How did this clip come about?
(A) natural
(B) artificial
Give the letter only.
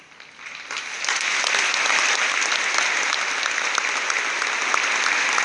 A